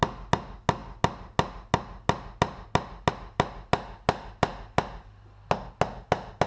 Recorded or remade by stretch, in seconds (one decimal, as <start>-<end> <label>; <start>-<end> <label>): 0.0-6.5 recorded